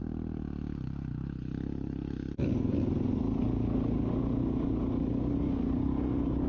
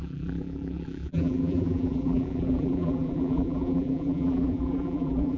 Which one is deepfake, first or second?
second